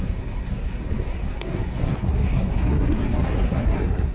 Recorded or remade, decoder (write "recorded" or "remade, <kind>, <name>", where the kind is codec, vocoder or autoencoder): remade, codec, SNAC